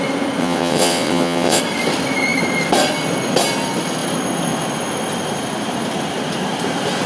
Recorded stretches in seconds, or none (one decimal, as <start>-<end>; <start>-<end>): 0.0-0.4; 1.6-7.1